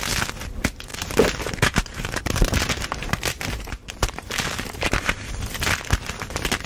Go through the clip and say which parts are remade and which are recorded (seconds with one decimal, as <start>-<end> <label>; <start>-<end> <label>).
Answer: 0.0-0.9 recorded; 0.9-4.9 remade; 4.9-6.7 recorded

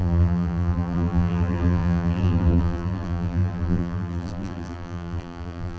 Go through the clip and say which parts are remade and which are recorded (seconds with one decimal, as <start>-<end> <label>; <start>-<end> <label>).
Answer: 0.0-5.8 remade